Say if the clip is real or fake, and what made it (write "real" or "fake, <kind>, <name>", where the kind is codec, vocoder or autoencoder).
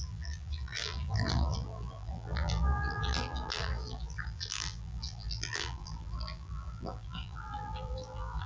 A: fake, vocoder, BigVGAN v2